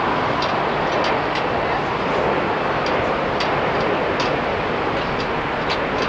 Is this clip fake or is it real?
real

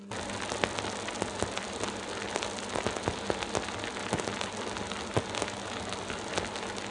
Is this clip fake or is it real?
real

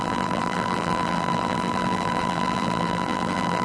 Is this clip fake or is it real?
fake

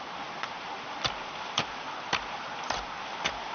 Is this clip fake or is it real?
real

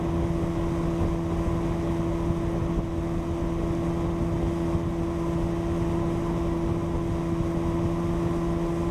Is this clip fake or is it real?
real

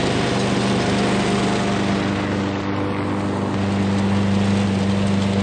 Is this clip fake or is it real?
real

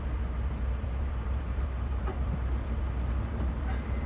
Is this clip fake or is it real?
fake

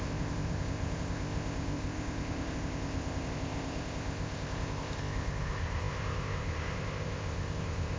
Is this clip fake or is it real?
fake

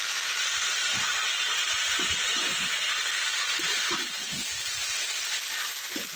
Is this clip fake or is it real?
real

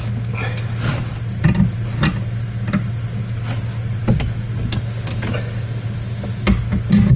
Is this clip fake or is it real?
real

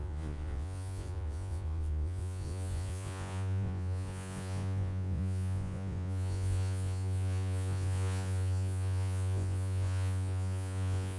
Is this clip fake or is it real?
fake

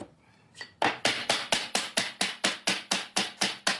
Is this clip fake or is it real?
real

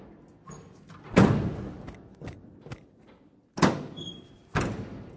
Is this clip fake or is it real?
real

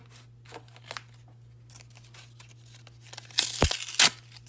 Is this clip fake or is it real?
real